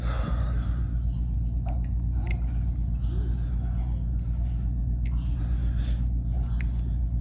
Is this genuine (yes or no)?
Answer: yes